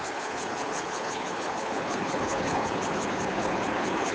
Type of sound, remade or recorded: remade